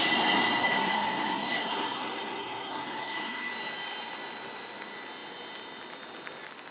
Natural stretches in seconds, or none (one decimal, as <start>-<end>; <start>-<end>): 0.0-0.6; 3.5-6.7